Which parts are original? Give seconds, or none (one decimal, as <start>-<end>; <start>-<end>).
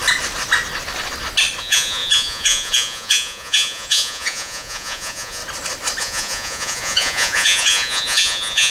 0.0-1.6; 5.4-6.0